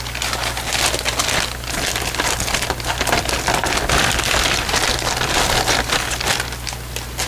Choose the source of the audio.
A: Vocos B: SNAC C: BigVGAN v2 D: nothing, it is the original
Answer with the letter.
D